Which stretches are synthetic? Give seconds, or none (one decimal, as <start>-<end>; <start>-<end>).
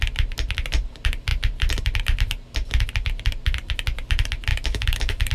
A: 4.5-5.3